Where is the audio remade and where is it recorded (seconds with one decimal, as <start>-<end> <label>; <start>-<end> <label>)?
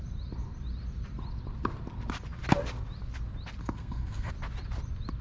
0.0-3.6 recorded; 3.6-4.3 remade; 4.3-5.2 recorded